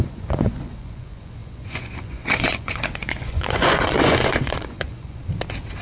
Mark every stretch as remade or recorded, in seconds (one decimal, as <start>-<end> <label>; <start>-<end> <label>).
0.0-5.2 remade; 5.2-5.8 recorded